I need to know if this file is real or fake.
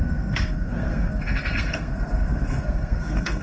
fake